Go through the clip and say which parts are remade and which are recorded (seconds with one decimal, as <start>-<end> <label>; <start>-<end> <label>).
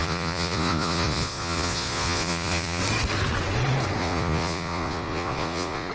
0.0-2.8 remade; 2.8-4.0 recorded; 4.0-5.9 remade